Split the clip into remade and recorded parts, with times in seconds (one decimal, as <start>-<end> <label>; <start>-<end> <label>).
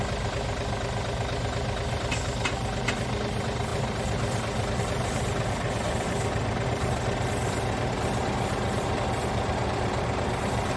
0.0-10.8 recorded